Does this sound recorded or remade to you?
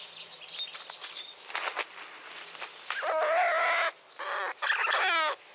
recorded